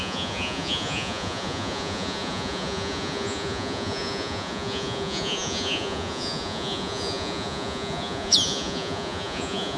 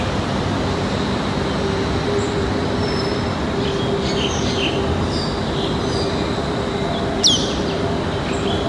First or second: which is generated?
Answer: first